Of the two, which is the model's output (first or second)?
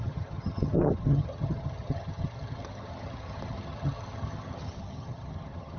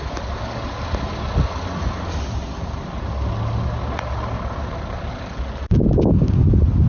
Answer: first